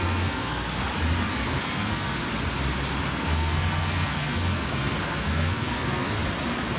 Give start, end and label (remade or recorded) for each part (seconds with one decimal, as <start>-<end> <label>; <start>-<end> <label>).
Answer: 0.0-0.8 remade; 0.8-1.3 recorded; 1.3-2.2 remade; 2.2-3.1 recorded; 3.1-6.2 remade; 6.2-6.8 recorded